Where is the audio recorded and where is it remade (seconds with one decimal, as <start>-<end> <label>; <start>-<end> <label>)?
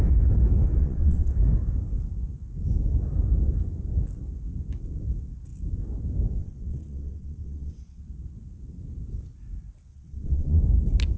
0.0-0.8 recorded; 0.8-1.3 remade; 1.3-6.4 recorded; 6.4-8.0 remade; 8.0-9.9 recorded; 9.9-10.6 remade; 10.6-11.2 recorded